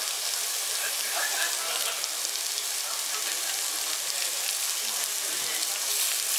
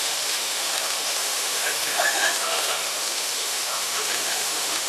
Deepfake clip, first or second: second